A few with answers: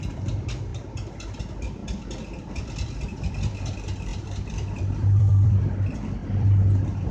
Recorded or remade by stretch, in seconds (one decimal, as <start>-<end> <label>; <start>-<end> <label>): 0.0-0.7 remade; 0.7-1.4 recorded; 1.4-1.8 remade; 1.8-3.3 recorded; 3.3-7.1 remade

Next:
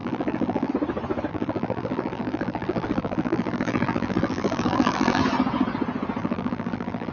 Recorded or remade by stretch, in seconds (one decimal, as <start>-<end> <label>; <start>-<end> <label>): 0.0-0.7 remade; 0.7-1.3 recorded; 1.3-5.2 remade; 5.2-6.2 recorded; 6.2-7.1 remade

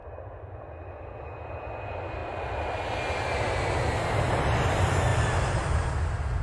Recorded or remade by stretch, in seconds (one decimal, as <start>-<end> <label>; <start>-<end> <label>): 0.0-0.9 remade; 0.9-5.1 recorded; 5.1-5.9 remade; 5.9-6.4 recorded